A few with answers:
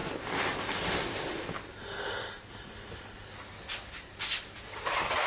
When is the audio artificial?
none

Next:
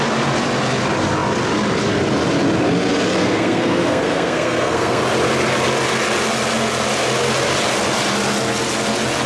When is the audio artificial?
3.2-5.0 (codec, SNAC)

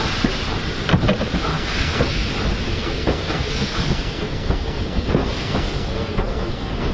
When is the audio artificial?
1.5-2.3 (codec, SNAC); 2.7-6.9

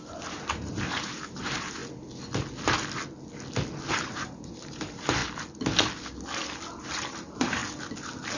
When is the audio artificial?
0.0-1.8 (vocoder, BigVGAN v2); 3.9-5.2; 6.8-7.6